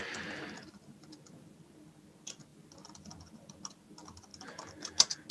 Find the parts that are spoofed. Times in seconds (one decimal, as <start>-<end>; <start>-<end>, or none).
none